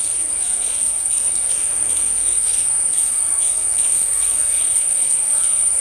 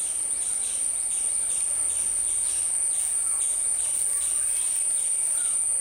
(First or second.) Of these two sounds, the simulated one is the first